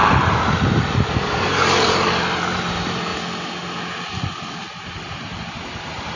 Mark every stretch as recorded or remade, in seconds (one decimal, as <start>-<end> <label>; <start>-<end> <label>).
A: 0.0-3.1 remade; 3.1-5.5 recorded; 5.5-6.2 remade